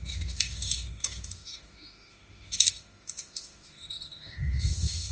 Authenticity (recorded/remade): remade